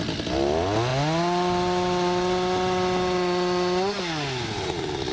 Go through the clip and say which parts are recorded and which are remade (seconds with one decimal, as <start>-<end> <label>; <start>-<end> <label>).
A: 0.0-5.1 recorded